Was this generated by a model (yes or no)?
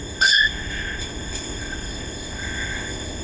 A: yes